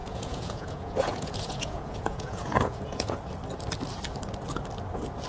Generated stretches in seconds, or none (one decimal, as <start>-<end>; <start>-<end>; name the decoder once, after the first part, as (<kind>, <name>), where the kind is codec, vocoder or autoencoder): 0.0-3.2 (vocoder, Vocos)

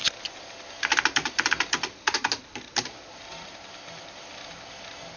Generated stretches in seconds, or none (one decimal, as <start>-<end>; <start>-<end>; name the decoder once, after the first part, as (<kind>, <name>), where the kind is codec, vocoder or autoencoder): none

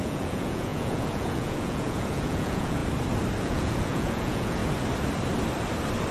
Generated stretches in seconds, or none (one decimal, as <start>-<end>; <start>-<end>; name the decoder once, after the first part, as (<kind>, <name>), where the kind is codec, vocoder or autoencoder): 0.0-2.8 (vocoder, Vocos); 3.4-4.6

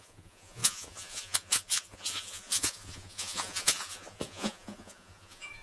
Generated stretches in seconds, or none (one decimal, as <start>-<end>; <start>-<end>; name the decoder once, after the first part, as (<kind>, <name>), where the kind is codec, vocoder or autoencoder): 0.0-5.6 (vocoder, Vocos)

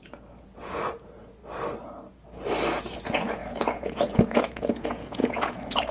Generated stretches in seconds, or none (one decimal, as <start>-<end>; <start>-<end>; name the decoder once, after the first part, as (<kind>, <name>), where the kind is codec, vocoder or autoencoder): 0.0-1.4 (vocoder, Vocos); 2.8-5.9

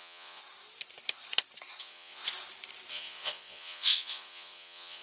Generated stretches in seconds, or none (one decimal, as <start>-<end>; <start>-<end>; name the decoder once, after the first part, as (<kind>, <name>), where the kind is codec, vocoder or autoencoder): 0.0-0.4 (vocoder, Vocos); 1.8-2.2; 2.9-5.0